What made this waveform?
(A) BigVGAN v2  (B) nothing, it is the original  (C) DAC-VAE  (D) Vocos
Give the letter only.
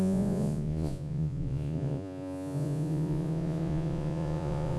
D